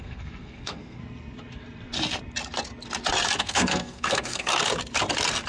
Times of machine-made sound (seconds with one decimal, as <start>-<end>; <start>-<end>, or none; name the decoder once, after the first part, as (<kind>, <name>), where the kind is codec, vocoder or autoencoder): 0.0-1.0 (codec, SNAC); 3.4-4.5